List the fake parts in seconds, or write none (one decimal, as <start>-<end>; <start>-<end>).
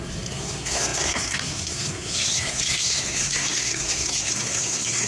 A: 0.0-5.1